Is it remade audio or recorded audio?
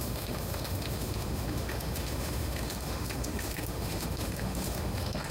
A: remade